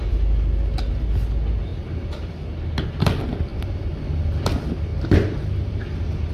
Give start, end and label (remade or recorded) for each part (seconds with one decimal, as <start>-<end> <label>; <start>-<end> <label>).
0.0-1.7 recorded; 1.7-2.3 remade; 2.3-4.9 recorded; 4.9-5.8 remade; 5.8-6.3 recorded